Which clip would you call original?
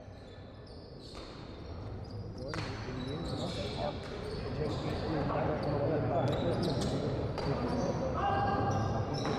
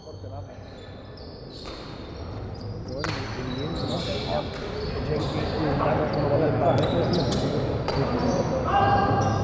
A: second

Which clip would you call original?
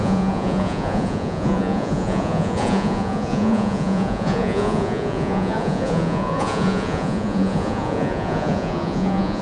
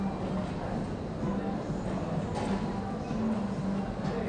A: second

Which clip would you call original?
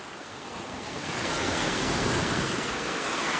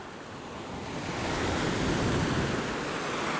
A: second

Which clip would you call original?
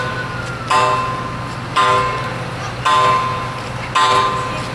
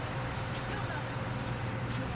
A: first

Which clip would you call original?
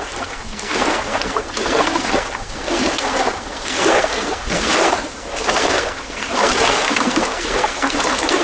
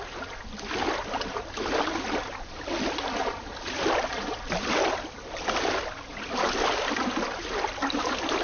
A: second